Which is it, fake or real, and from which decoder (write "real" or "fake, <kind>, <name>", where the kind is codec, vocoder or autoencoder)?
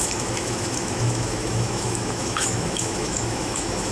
fake, autoencoder, DAC-VAE